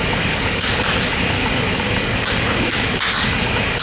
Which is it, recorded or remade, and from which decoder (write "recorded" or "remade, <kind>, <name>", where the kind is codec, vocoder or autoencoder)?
remade, codec, DAC